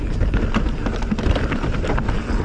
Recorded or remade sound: recorded